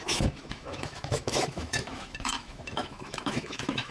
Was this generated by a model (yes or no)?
yes